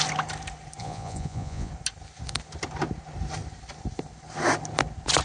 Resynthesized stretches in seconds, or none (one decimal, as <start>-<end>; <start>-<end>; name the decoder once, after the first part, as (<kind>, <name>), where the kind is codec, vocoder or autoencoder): 0.8-1.7 (vocoder, Vocos)